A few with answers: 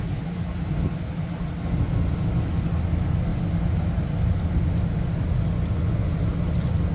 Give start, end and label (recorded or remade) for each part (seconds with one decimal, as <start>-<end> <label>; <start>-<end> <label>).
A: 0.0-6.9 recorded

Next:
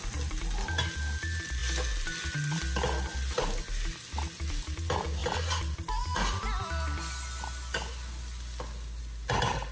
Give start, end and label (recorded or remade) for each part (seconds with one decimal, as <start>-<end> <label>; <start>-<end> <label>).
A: 0.0-9.7 recorded

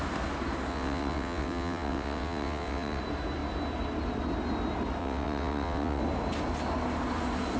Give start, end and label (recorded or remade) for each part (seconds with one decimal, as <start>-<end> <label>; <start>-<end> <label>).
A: 0.0-0.7 recorded; 0.7-3.0 remade; 3.0-5.0 recorded; 5.0-6.0 remade; 6.0-7.6 recorded

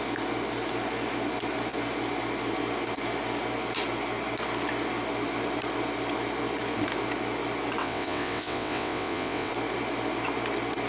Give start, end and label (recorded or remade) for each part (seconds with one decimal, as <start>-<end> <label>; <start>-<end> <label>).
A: 0.0-7.8 recorded; 7.8-9.5 remade; 9.5-10.9 recorded

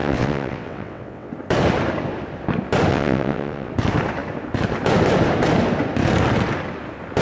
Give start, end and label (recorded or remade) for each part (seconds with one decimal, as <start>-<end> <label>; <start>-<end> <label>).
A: 0.0-1.3 remade; 1.3-2.9 recorded; 2.9-3.7 remade; 3.7-7.2 recorded

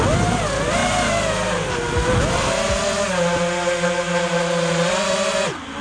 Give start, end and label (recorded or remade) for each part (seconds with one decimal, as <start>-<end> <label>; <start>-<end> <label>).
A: 0.0-5.8 recorded

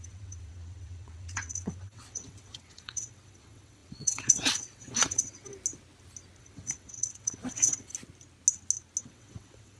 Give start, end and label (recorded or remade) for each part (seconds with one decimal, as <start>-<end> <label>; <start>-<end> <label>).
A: 0.0-5.5 remade; 5.5-6.4 recorded; 6.4-7.9 remade; 7.9-9.0 recorded; 9.0-9.8 remade